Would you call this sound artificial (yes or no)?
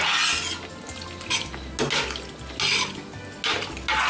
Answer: no